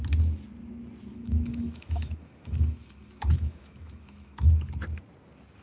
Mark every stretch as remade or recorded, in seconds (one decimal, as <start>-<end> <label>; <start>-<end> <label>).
0.0-1.1 recorded; 1.1-4.5 remade; 4.5-5.6 recorded